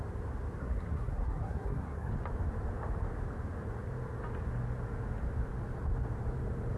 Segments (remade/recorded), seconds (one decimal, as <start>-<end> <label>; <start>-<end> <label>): 0.0-0.6 recorded; 0.6-2.1 remade; 2.1-6.8 recorded